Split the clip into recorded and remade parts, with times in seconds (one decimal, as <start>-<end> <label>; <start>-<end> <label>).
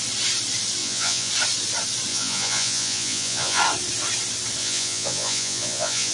0.0-0.8 recorded; 0.8-1.3 remade; 1.3-2.1 recorded; 2.1-3.6 remade; 3.6-4.6 recorded; 4.6-6.1 remade